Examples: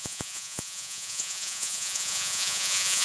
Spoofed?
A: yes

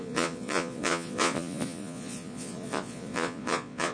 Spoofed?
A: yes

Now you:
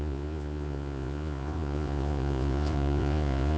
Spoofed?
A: yes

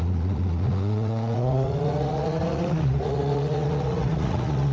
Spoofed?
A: yes